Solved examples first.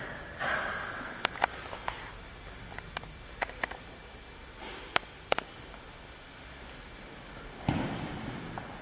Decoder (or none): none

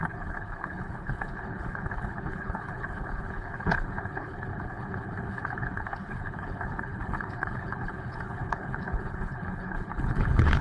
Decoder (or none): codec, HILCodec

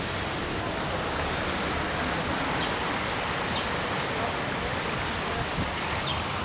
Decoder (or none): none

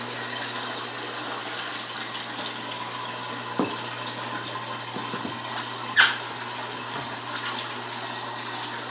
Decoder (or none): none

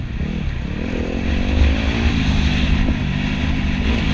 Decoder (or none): none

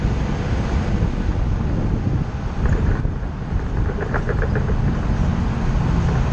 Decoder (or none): none